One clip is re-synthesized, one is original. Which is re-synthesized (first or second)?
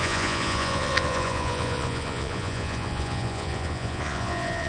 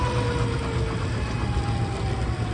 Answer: first